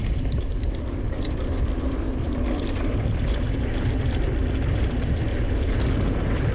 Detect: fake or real real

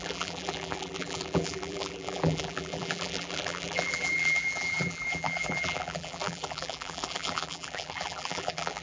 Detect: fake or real fake